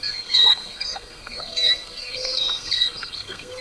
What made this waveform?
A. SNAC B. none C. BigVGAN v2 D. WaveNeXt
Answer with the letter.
A